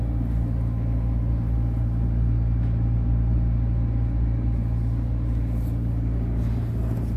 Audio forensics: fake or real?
real